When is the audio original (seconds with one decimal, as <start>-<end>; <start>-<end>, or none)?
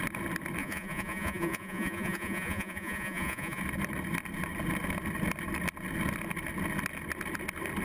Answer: 0.0-0.6; 3.6-7.8